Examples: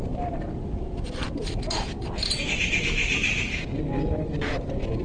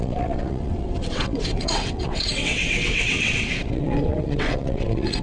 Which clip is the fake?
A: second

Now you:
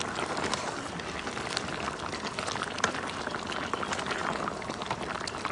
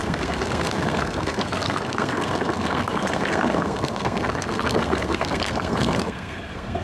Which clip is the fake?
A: second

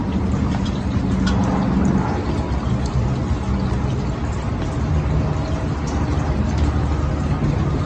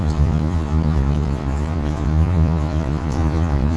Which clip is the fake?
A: second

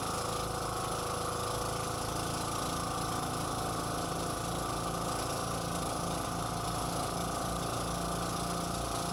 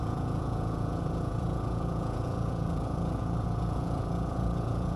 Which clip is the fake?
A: second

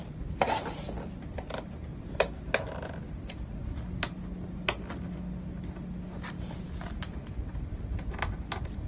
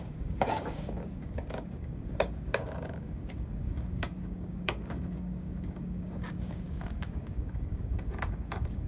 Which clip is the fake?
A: second